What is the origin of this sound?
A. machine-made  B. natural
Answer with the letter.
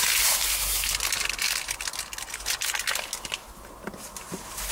B